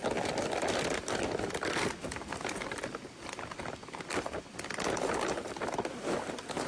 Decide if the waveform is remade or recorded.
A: recorded